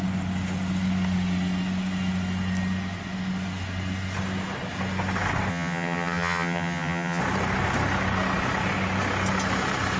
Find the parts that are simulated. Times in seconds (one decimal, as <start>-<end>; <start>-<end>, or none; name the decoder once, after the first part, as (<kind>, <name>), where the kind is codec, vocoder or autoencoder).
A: 5.5-7.2 (vocoder, HiFi-GAN)